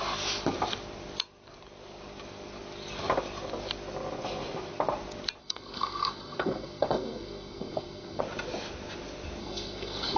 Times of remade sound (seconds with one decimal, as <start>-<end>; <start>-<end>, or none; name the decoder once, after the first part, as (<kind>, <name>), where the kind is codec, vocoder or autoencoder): 5.4-8.2 (codec, SNAC); 9.4-10.2